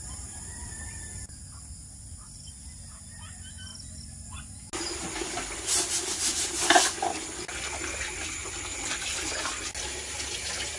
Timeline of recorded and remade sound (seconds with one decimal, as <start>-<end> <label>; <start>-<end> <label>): 0.0-10.8 recorded